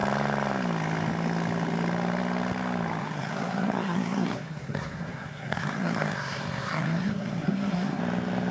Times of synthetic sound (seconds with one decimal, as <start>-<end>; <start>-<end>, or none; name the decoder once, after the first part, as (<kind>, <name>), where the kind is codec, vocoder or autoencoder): 3.0-8.0 (codec, SNAC)